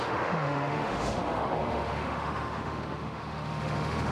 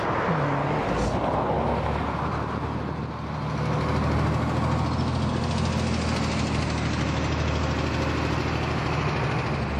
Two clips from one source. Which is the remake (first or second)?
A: first